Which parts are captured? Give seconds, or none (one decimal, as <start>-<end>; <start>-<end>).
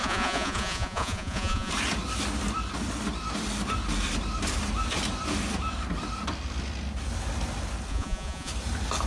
1.7-7.9; 8.5-9.1